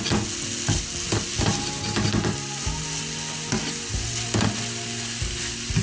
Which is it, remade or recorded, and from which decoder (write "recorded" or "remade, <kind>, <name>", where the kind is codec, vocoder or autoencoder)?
recorded